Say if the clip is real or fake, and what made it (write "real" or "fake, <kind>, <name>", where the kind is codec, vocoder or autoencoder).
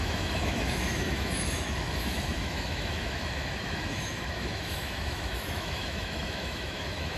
fake, autoencoder, DAC-VAE